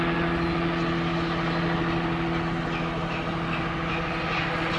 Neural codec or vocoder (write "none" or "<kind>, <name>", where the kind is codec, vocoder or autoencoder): none